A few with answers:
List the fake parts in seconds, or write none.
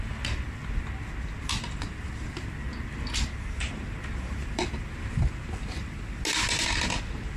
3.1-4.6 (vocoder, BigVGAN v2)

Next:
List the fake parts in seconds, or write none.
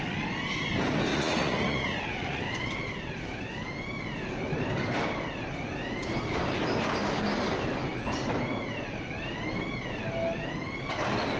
1.1-2.4 (vocoder, Vocos)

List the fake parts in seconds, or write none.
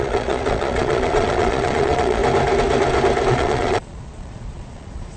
0.0-2.2 (vocoder, Vocos); 3.3-5.2